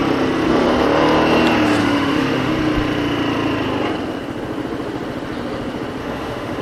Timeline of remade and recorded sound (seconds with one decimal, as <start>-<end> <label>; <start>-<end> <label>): 0.0-1.8 recorded; 1.8-2.5 remade; 2.5-6.0 recorded; 6.0-6.6 remade